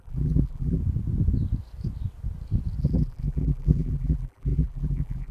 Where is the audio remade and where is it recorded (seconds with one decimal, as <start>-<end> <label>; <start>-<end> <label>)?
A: 0.0-0.8 remade; 0.8-2.8 recorded; 2.8-5.3 remade